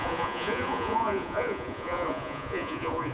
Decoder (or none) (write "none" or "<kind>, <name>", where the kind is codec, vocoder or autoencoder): vocoder, Vocos